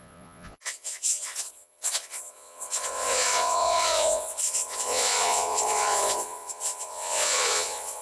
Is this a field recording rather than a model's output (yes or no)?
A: no